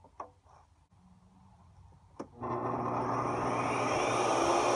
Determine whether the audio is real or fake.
real